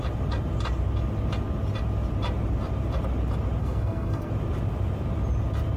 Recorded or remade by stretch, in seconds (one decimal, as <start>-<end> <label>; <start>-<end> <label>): 0.0-3.6 recorded; 3.6-4.3 remade; 4.3-5.8 recorded